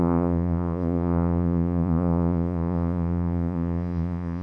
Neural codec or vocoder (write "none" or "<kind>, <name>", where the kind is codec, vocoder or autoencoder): vocoder, Vocos